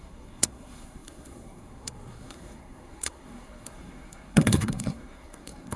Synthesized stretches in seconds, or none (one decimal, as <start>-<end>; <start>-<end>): 0.0-5.8